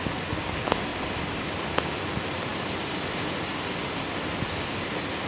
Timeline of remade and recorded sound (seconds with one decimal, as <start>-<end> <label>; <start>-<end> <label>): 0.0-5.3 recorded